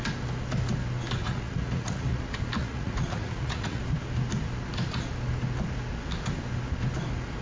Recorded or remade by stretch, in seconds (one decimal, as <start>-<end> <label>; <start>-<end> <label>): 0.0-1.2 recorded; 1.2-2.2 remade; 2.2-2.6 recorded; 2.6-3.8 remade; 3.8-7.4 recorded